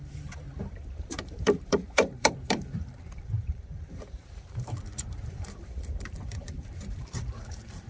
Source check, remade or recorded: remade